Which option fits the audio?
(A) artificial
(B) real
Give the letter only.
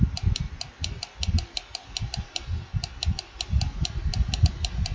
B